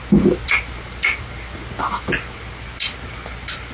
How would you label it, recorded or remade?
recorded